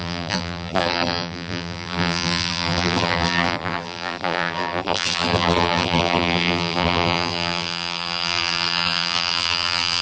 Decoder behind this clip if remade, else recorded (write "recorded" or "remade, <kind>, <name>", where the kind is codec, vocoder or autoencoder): remade, vocoder, BigVGAN v2